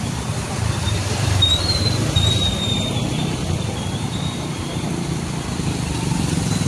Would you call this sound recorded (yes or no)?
no